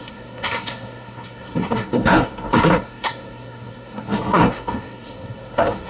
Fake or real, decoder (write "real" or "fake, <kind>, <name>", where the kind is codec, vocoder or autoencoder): fake, codec, SNAC